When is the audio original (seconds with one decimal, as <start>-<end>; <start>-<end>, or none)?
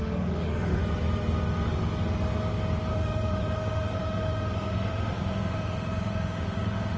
0.8-2.9